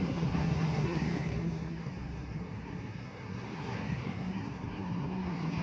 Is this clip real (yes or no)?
no